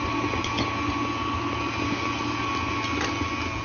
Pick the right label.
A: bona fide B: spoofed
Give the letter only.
A